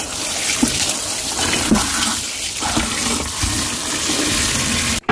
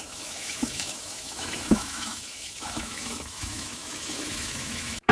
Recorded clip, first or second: first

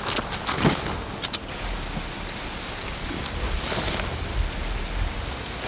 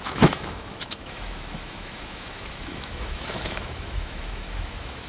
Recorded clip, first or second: first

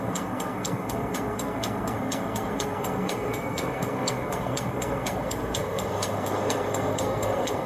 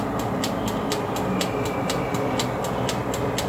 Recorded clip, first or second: second